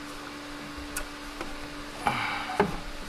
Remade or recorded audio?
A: recorded